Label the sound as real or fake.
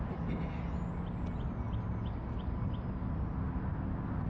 real